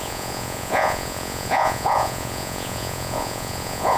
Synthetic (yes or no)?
yes